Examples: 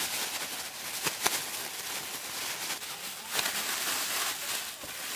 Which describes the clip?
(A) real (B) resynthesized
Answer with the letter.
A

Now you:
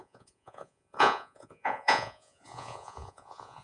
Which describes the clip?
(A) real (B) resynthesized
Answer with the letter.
B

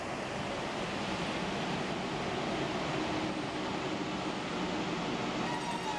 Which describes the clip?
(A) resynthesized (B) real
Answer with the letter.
B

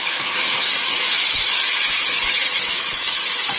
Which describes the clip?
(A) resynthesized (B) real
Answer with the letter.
A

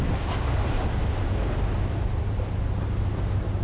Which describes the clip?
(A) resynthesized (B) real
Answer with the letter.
B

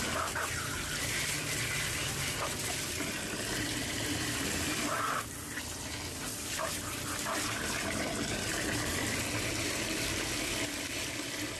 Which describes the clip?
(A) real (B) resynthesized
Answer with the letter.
A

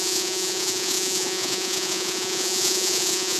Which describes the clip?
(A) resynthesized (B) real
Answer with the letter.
A